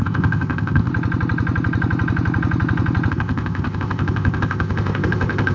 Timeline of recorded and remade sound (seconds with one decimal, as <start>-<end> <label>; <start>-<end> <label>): 0.0-0.9 remade; 0.9-3.1 recorded; 3.1-5.5 remade